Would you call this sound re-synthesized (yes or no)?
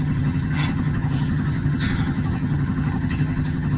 yes